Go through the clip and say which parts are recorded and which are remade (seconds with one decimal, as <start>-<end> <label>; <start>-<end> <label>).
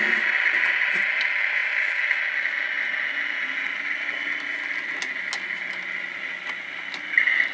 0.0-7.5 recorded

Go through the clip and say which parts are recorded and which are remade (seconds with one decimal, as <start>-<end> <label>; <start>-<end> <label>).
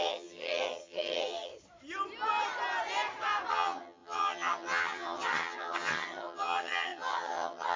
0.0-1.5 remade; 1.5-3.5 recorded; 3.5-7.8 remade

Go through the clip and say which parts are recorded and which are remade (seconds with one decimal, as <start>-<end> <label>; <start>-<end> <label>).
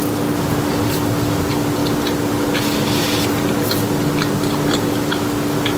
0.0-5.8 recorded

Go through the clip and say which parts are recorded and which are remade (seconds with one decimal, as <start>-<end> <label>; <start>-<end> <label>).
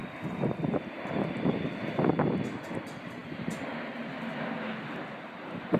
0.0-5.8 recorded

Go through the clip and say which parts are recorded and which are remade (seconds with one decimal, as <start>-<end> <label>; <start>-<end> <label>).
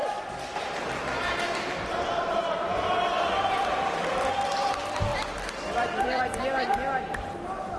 0.0-4.3 remade; 4.3-5.1 recorded; 5.1-6.2 remade; 6.2-7.8 recorded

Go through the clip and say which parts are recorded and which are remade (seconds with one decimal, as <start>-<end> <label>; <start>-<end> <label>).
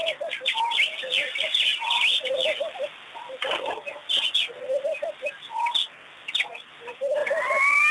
0.0-1.7 remade; 1.7-2.3 recorded; 2.3-4.0 remade; 4.0-6.5 recorded; 6.5-7.2 remade; 7.2-7.9 recorded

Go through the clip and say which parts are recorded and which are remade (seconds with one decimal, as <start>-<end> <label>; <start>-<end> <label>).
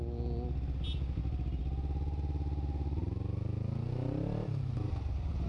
0.0-5.5 recorded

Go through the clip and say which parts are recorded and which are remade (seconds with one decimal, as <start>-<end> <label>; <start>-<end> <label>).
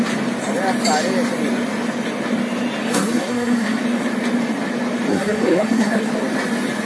0.0-2.8 recorded; 2.8-3.8 remade; 3.8-5.1 recorded; 5.1-6.1 remade; 6.1-6.9 recorded